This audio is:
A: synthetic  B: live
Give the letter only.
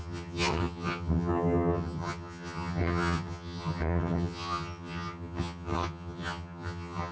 A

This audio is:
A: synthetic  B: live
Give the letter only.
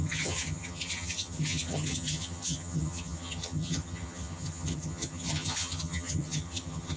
A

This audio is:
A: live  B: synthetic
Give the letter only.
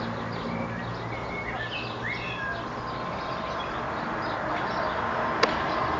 A